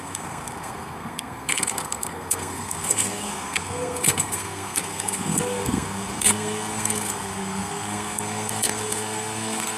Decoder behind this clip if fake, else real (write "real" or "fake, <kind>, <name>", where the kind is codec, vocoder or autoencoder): fake, codec, SNAC